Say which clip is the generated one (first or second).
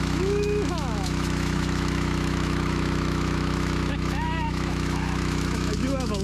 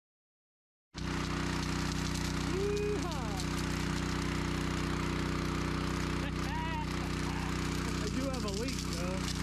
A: first